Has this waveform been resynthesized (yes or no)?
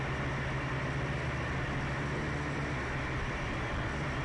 no